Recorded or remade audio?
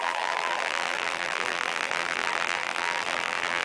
remade